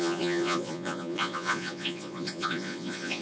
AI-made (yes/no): yes